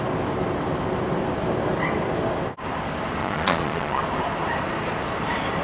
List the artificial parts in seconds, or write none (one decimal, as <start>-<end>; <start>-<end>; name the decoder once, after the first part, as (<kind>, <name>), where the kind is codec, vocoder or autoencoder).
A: 3.2-4.0 (vocoder, Vocos)